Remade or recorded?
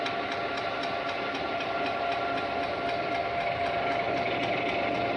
recorded